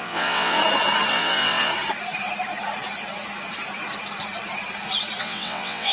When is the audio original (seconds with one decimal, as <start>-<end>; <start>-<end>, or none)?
0.6-1.1; 1.7-5.2